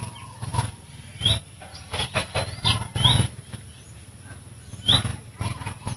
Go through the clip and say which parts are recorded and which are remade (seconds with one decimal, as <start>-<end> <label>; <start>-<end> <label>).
0.0-0.5 recorded; 0.5-1.4 remade; 1.4-6.0 recorded